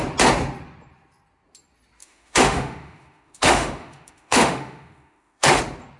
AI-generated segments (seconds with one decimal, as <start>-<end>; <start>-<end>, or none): 2.0-5.6